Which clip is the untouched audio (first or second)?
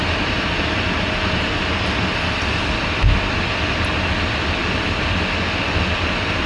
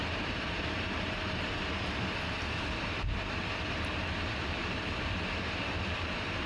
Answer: first